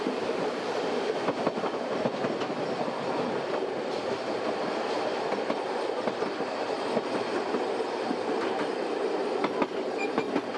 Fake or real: real